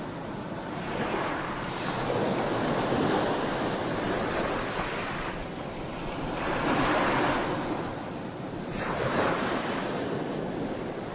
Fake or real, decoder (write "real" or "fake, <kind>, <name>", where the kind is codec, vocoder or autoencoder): fake, vocoder, BigVGAN v2